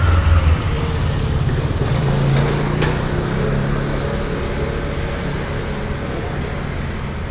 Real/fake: real